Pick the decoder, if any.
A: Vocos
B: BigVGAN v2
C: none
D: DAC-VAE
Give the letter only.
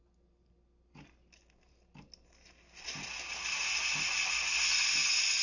C